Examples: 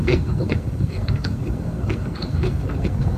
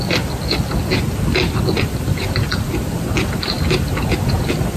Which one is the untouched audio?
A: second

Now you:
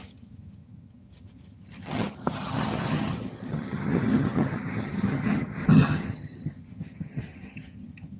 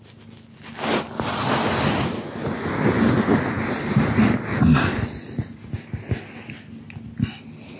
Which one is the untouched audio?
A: second